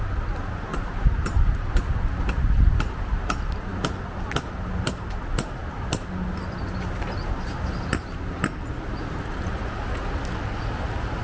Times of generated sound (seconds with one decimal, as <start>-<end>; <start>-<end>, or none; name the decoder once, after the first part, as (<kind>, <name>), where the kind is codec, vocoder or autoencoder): 0.7-3.0 (vocoder, BigVGAN v2)